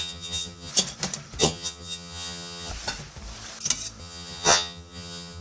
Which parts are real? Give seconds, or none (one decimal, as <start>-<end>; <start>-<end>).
0.7-1.4; 2.7-4.0